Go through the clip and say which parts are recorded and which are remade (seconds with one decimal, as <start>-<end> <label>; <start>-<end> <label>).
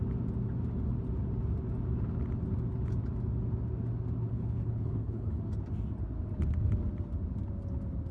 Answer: 0.0-4.3 recorded; 4.3-5.4 remade; 5.4-8.1 recorded